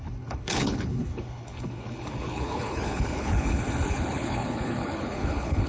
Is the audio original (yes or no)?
no